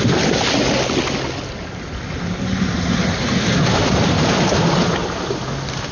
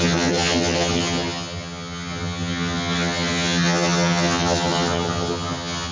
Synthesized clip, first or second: second